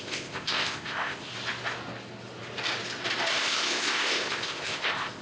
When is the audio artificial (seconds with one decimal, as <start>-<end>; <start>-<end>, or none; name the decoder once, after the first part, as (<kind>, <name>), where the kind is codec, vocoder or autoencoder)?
0.0-1.3 (codec, ZipCodec); 3.4-5.2